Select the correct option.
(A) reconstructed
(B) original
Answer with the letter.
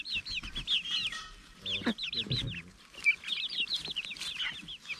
B